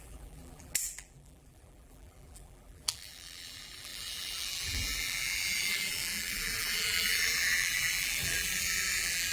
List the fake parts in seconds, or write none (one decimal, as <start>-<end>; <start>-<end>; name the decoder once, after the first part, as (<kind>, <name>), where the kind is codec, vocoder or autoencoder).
0.0-9.3 (vocoder, BigVGAN v2)